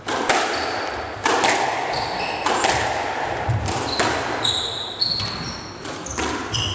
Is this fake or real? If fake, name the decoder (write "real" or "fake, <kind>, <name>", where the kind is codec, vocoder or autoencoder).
real